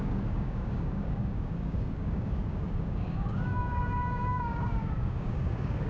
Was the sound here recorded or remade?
remade